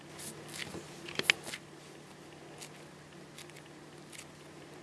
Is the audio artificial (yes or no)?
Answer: no